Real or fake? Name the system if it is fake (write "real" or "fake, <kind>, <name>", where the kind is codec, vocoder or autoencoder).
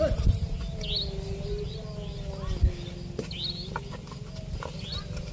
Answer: real